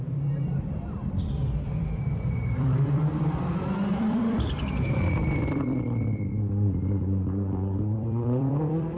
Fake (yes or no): yes